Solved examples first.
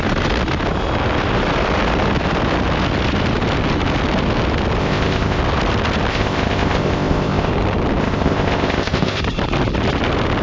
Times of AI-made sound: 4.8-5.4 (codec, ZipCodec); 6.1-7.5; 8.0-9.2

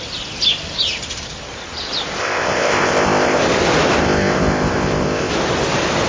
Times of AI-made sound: 2.2-3.4 (codec, ZipCodec); 4.0-5.3

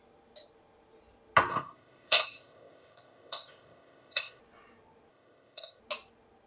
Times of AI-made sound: 1.5-4.4 (codec, ZipCodec); 5.1-5.8

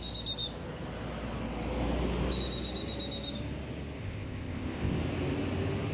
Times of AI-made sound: 4.0-5.0 (codec, ZipCodec)

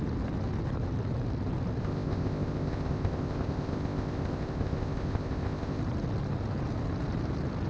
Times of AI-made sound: 1.8-5.8 (codec, ZipCodec)

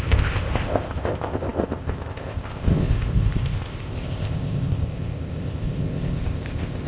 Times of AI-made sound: 0.0-6.9 (codec, ZipCodec)

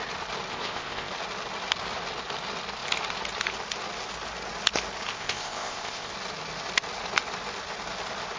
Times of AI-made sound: 0.5-1.1 (codec, ZipCodec); 5.1-6.1

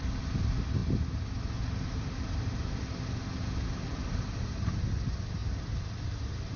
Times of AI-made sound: none